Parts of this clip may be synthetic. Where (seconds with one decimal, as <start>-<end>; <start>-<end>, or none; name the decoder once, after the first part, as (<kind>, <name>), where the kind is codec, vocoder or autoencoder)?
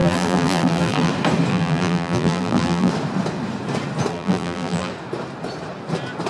0.0-1.1 (vocoder, BigVGAN v2); 1.5-2.9; 4.1-4.9